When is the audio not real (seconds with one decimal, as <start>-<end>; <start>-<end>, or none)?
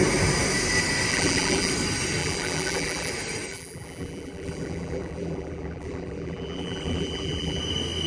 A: 1.1-1.7; 2.2-3.1; 3.5-7.6